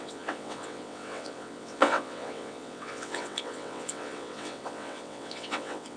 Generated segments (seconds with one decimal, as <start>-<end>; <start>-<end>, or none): 0.0-6.0